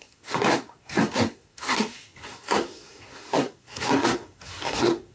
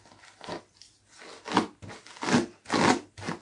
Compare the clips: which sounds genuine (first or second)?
second